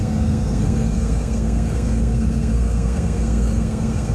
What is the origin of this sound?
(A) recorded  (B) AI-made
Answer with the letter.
B